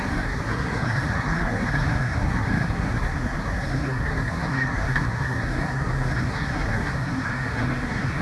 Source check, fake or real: fake